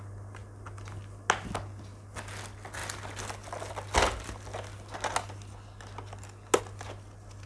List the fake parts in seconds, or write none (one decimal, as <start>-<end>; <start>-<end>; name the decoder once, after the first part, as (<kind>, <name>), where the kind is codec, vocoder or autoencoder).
none